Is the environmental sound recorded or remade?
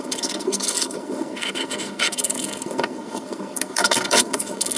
remade